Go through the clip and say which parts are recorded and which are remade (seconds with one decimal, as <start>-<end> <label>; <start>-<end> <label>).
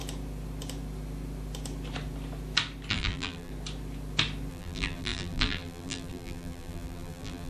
0.0-2.9 recorded; 2.9-3.5 remade; 3.5-4.5 recorded; 4.5-7.5 remade